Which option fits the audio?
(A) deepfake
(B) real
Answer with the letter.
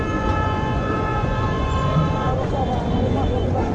A